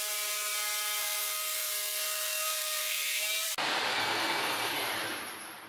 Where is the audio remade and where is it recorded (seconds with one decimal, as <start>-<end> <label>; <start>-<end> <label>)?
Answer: 0.0-1.0 recorded; 1.0-3.2 remade; 3.2-3.9 recorded; 3.9-4.7 remade; 4.7-5.7 recorded